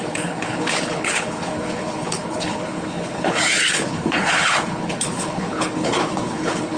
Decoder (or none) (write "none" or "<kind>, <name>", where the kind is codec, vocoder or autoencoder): codec, HILCodec